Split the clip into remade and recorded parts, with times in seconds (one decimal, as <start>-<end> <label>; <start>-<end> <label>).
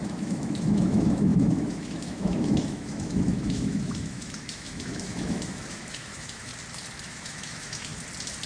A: 0.0-6.5 remade; 6.5-7.0 recorded; 7.0-7.9 remade; 7.9-8.5 recorded